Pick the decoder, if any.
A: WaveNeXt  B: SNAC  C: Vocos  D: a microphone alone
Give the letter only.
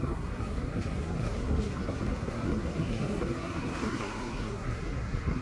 B